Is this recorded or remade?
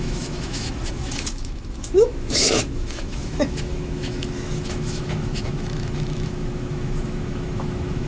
remade